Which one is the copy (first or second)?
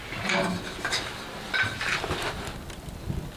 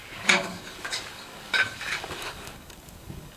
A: second